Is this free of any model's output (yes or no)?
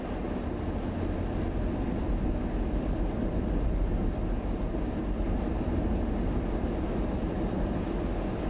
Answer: yes